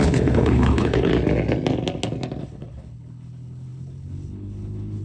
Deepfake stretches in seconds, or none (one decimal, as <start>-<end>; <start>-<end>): 0.0-1.1; 2.4-5.0